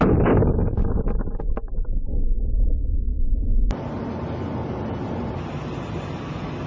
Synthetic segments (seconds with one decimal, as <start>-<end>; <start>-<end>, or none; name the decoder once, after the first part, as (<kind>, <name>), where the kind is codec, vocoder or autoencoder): none